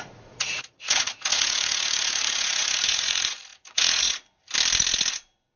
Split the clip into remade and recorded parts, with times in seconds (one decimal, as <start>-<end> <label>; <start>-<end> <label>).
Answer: 0.0-4.4 remade; 4.4-5.1 recorded; 5.1-5.6 remade